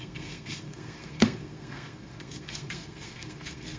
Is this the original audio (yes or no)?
no